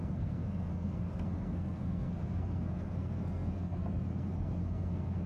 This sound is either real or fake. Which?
fake